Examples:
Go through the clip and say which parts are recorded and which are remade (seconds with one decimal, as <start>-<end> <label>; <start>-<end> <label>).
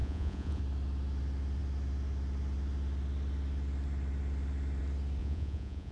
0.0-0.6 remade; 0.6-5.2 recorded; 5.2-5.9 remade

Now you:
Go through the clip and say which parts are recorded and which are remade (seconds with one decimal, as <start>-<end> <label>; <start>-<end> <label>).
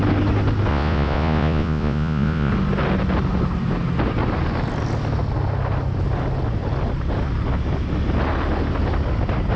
0.0-0.7 recorded; 0.7-2.5 remade; 2.5-9.6 recorded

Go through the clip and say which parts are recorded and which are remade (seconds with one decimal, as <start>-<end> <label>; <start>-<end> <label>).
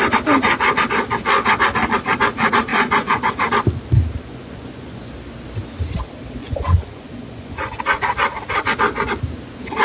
0.0-2.7 recorded; 2.7-3.3 remade; 3.3-4.3 recorded; 4.3-5.1 remade; 5.1-6.4 recorded; 6.4-7.8 remade; 7.8-9.8 recorded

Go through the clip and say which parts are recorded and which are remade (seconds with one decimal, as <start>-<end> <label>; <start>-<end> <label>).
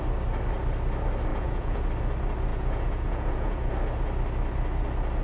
0.0-1.3 recorded; 1.3-1.8 remade; 1.8-2.5 recorded; 2.5-3.7 remade; 3.7-5.2 recorded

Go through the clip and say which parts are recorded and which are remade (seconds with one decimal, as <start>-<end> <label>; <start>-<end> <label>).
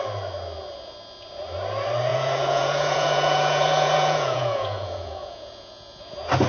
0.0-2.1 recorded; 2.1-6.0 remade; 6.0-6.5 recorded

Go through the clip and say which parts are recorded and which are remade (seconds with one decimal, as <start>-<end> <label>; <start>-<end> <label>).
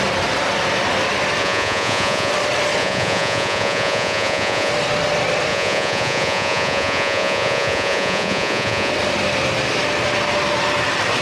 0.0-1.4 recorded; 1.4-2.3 remade; 2.3-2.8 recorded; 2.8-4.7 remade; 4.7-5.5 recorded; 5.5-8.9 remade; 8.9-11.2 recorded